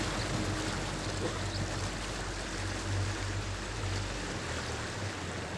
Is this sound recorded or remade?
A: recorded